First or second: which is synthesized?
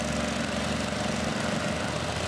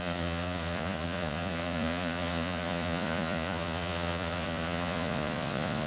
second